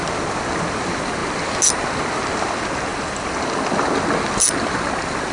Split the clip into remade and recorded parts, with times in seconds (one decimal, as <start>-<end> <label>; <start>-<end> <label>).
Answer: 0.0-5.3 recorded